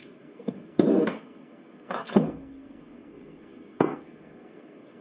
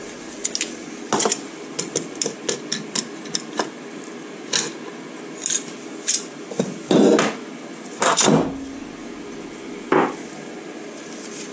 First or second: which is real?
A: second